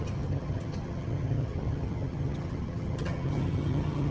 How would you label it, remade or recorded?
remade